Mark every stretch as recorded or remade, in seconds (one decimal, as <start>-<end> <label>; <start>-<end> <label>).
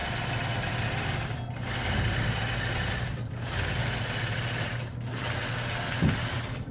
0.0-6.7 recorded